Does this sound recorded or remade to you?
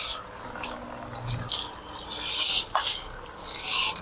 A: recorded